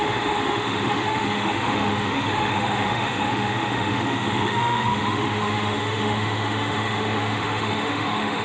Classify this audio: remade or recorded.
remade